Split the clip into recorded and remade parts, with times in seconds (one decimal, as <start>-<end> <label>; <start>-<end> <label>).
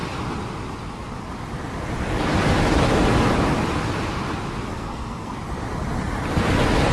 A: 0.0-4.7 recorded; 4.7-5.3 remade; 5.3-6.9 recorded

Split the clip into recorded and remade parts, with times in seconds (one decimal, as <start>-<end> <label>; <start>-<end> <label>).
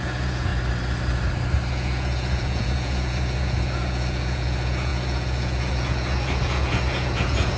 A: 0.0-0.5 remade; 0.5-1.7 recorded; 1.7-7.6 remade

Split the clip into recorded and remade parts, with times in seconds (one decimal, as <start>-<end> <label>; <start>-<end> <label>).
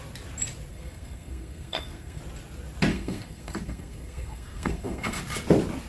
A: 0.0-0.7 recorded; 0.7-2.2 remade; 2.2-2.9 recorded; 2.9-5.2 remade; 5.2-5.9 recorded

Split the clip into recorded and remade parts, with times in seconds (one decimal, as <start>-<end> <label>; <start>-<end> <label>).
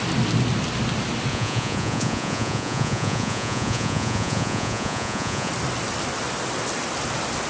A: 0.0-1.3 recorded; 1.3-5.5 remade; 5.5-7.5 recorded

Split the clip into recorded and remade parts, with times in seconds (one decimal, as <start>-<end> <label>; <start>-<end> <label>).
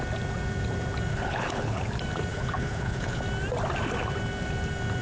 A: 0.0-1.1 recorded; 1.1-1.8 remade; 1.8-2.3 recorded; 2.3-3.2 remade; 3.2-5.0 recorded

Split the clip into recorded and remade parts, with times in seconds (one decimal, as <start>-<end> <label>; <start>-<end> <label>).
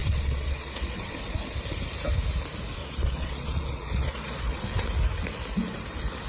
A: 0.0-1.4 remade; 1.4-2.8 recorded; 2.8-4.6 remade; 4.6-6.3 recorded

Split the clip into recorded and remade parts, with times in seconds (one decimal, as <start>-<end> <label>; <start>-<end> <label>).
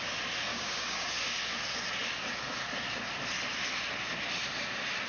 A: 0.0-0.5 recorded; 0.5-1.1 remade; 1.1-5.1 recorded